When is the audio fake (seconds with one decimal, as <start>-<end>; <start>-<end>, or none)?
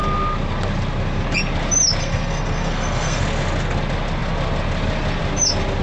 2.0-3.2